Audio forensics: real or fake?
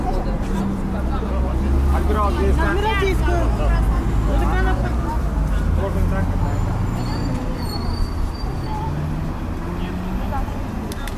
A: real